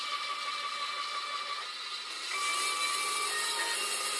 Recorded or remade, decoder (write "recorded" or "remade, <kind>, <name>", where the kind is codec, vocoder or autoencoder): recorded